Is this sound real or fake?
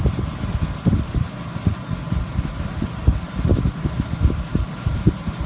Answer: real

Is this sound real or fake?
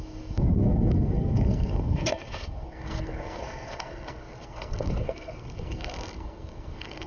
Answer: fake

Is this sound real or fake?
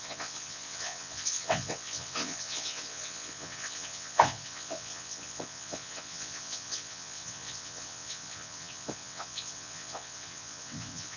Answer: fake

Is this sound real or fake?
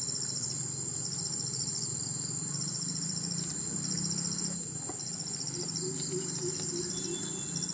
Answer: real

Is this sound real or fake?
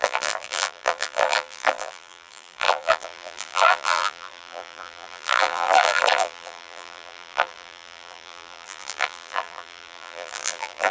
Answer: fake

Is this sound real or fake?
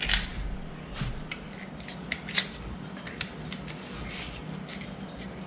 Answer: real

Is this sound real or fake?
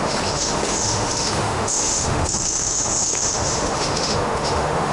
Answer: fake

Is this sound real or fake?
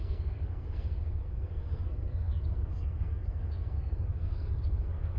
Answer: fake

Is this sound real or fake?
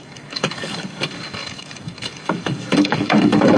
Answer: fake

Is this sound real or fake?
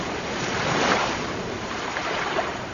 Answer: fake